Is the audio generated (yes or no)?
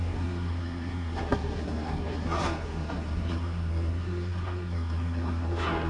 yes